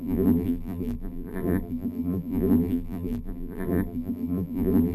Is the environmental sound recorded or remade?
remade